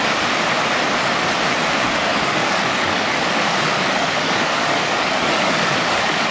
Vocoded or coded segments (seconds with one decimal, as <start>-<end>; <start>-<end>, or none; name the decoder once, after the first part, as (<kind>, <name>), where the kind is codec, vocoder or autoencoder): 2.1-6.3 (codec, DAC)